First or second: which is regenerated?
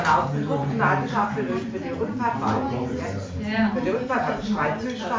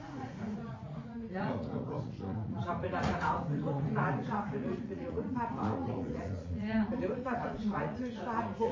second